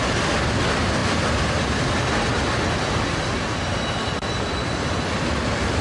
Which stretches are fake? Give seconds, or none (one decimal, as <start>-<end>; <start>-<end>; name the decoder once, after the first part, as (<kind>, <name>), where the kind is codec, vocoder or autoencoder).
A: none